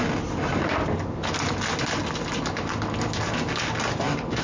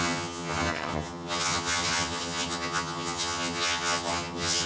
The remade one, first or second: second